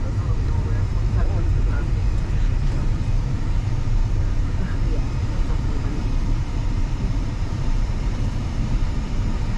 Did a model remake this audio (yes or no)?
yes